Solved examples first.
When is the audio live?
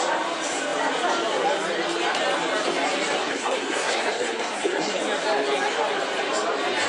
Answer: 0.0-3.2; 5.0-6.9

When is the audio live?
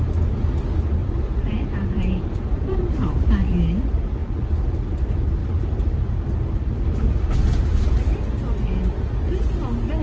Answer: 0.0-1.0; 3.3-5.4; 7.1-10.0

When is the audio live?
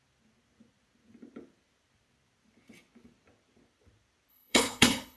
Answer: 0.0-4.3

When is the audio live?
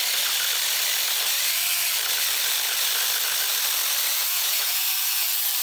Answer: 0.0-4.1; 4.8-5.6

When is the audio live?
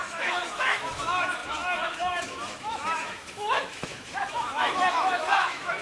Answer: none